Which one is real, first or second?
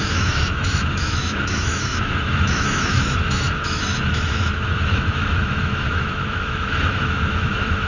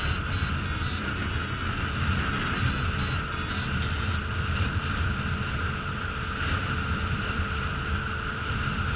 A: second